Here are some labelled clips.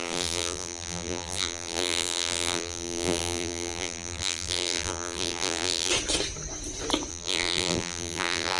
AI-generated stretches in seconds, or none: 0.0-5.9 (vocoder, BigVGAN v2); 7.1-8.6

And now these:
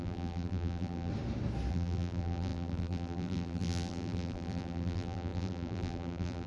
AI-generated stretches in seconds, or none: 0.0-1.1 (vocoder, BigVGAN v2); 1.7-6.5

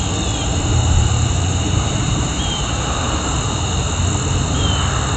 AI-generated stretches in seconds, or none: 0.5-3.6 (vocoder, BigVGAN v2)

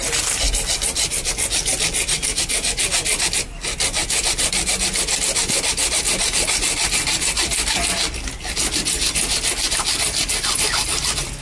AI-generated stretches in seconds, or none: 4.0-4.7 (vocoder, BigVGAN v2)